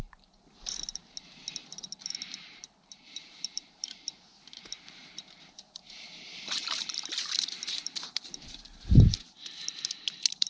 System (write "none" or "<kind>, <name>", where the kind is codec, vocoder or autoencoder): vocoder, BigVGAN v2